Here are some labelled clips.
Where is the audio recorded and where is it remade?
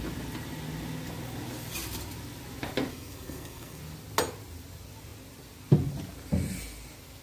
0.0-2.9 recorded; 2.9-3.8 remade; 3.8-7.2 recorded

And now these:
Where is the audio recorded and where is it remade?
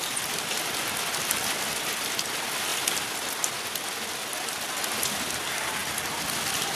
0.0-6.8 recorded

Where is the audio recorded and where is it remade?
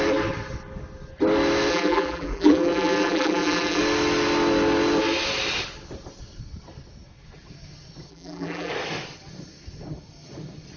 0.0-1.7 recorded; 1.7-3.8 remade; 3.8-8.1 recorded; 8.1-8.7 remade; 8.7-10.8 recorded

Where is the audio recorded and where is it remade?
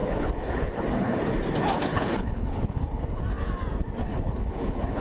0.0-1.2 remade; 1.2-1.9 recorded; 1.9-3.2 remade; 3.2-4.1 recorded; 4.1-5.0 remade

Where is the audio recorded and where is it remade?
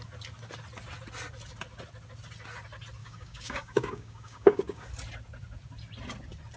0.0-3.0 recorded; 3.0-4.9 remade; 4.9-6.6 recorded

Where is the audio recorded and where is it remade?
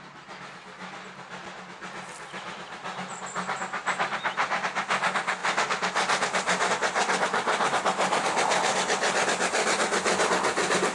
0.0-10.9 recorded